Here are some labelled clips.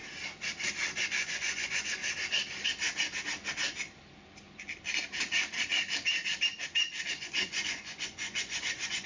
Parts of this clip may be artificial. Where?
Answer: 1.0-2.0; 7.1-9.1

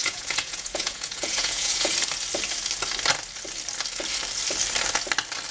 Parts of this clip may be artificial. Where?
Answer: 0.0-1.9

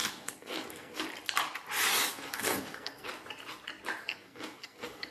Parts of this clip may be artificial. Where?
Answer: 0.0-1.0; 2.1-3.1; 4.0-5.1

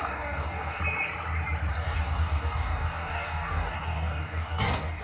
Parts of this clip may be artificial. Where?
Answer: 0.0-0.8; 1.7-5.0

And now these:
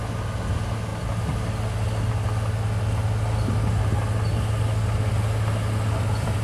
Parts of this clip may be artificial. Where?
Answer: none

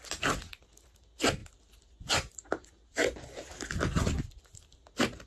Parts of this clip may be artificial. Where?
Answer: 1.4-4.6

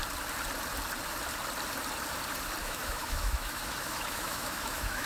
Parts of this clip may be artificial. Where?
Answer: 2.6-5.1